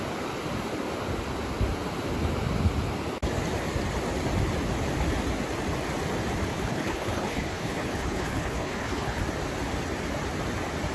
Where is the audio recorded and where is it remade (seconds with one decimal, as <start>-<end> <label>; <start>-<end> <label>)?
0.0-6.5 recorded; 6.5-9.2 remade; 9.2-10.9 recorded